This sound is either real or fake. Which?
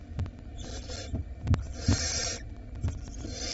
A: real